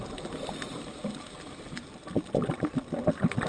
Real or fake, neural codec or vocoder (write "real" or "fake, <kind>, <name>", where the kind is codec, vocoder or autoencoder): real